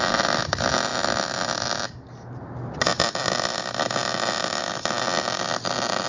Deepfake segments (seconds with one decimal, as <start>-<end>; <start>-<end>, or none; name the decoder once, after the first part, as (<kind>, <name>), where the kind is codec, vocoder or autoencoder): none